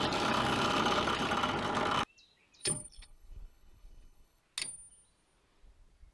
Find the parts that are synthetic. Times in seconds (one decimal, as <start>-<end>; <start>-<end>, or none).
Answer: 2.6-4.4